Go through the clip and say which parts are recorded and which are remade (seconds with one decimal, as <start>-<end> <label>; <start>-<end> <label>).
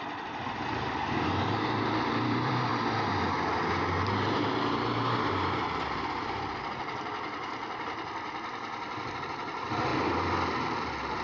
0.0-2.7 remade; 2.7-3.7 recorded; 3.7-9.9 remade; 9.9-11.2 recorded